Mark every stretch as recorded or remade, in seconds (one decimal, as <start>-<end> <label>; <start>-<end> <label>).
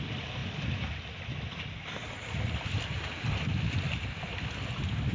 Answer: 0.0-5.1 recorded